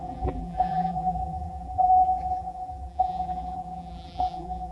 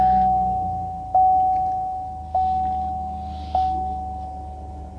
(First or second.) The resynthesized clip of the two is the first